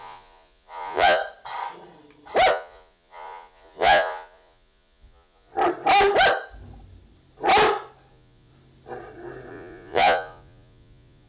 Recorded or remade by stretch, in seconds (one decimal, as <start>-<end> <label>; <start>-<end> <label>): 0.0-1.2 remade; 1.2-2.5 recorded; 2.5-5.5 remade; 5.5-8.1 recorded; 8.1-8.5 remade; 8.5-9.5 recorded; 9.5-11.3 remade